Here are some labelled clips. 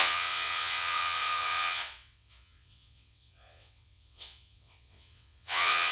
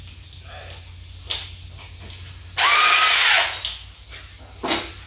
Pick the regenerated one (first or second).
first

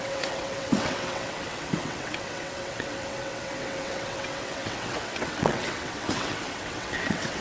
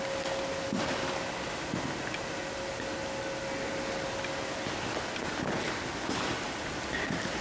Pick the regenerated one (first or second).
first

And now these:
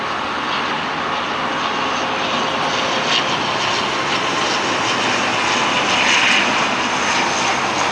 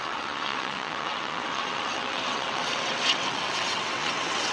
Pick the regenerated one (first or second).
second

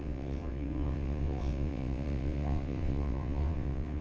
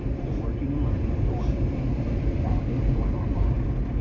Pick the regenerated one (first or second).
first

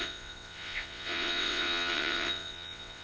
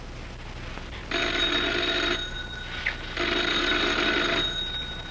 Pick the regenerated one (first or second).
first